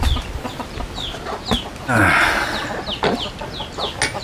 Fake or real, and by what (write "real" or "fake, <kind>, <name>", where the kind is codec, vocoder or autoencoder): real